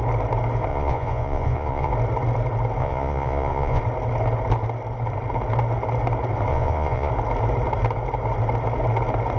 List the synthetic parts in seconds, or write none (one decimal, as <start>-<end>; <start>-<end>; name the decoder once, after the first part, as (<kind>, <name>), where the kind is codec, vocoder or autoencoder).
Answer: 0.7-1.9 (vocoder, Vocos); 2.8-3.8; 6.5-7.1